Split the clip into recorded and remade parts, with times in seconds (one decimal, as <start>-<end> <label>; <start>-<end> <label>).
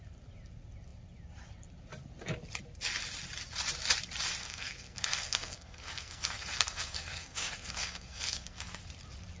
0.0-4.4 recorded; 4.4-8.8 remade; 8.8-9.4 recorded